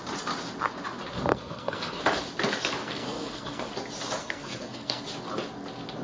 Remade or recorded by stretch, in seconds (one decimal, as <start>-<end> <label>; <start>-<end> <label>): 0.0-1.3 recorded; 1.3-2.0 remade; 2.0-2.8 recorded; 2.8-3.7 remade; 3.7-4.2 recorded; 4.2-5.0 remade; 5.0-6.0 recorded